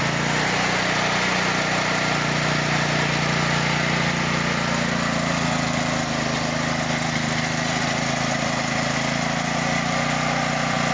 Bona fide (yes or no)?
yes